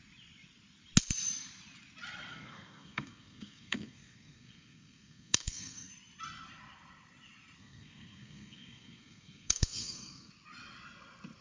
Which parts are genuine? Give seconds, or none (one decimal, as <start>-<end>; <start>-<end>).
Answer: 0.0-2.3; 5.9-7.6; 10.3-11.4